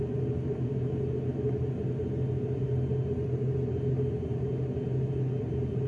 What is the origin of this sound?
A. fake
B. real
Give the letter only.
B